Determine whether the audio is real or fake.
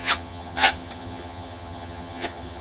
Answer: fake